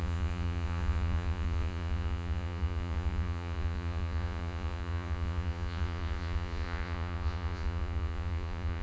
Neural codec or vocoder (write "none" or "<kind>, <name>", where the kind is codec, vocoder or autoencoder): vocoder, Vocos